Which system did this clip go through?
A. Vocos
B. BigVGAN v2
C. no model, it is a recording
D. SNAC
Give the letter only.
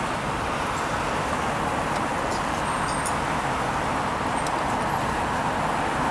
C